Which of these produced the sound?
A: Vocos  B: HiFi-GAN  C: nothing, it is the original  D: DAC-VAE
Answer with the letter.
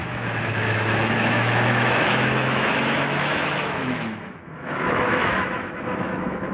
D